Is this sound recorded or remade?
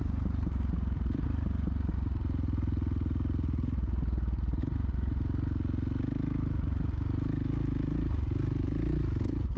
recorded